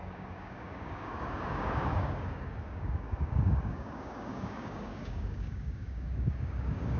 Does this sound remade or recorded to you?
remade